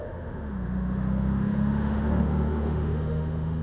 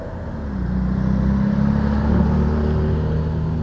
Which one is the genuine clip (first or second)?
second